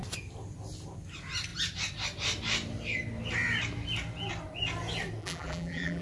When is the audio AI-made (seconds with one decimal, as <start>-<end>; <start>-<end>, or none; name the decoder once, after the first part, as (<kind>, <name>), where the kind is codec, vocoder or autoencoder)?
5.2-6.0 (vocoder, BigVGAN v2)